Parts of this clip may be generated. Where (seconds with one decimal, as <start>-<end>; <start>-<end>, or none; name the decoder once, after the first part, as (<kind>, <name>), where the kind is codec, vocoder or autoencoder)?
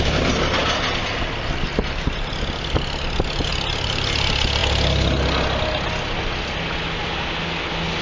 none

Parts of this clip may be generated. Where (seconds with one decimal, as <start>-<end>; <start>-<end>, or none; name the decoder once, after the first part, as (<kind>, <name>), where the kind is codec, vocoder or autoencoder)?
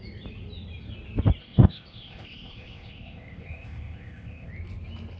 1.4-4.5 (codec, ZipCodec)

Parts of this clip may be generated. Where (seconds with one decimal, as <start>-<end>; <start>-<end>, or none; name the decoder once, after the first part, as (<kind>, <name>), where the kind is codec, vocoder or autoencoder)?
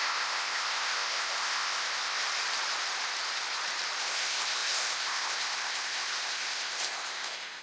0.0-2.2 (codec, ZipCodec); 4.0-7.6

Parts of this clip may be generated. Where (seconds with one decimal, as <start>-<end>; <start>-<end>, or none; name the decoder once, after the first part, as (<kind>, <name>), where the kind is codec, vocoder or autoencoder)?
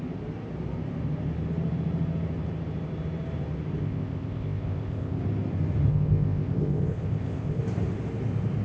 3.8-5.2 (codec, ZipCodec); 5.9-7.6